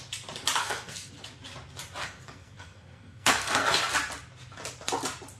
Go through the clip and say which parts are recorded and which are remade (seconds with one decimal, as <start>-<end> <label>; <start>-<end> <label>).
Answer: 0.0-0.6 recorded; 0.6-1.1 remade; 1.1-2.0 recorded; 2.0-3.7 remade; 3.7-5.4 recorded